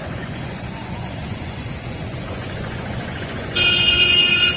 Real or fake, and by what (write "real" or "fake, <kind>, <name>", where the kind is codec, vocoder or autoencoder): fake, vocoder, Vocos